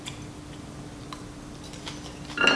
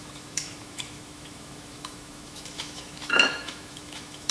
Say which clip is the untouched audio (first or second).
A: first